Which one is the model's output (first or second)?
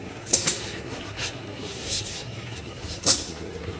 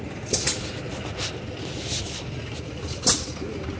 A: first